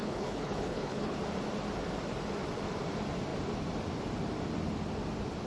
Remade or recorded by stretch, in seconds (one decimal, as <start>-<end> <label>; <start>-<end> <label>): 0.0-1.2 remade; 1.2-5.5 recorded